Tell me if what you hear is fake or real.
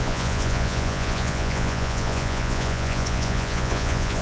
fake